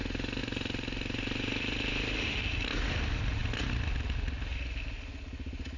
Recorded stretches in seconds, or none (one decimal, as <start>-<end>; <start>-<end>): 0.0-5.8